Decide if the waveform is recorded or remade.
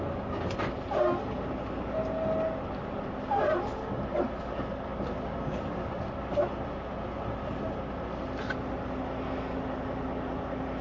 recorded